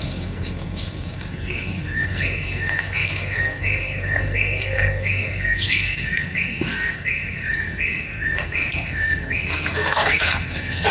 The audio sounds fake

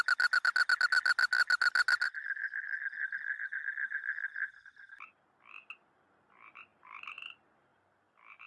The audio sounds real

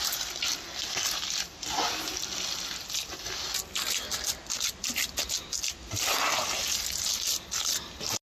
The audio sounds real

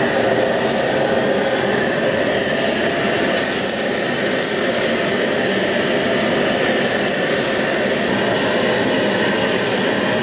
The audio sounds real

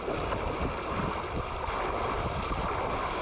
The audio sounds real